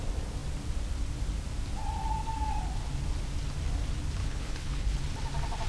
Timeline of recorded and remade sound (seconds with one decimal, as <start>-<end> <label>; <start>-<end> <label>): 0.0-4.2 recorded; 4.2-5.0 remade; 5.0-5.7 recorded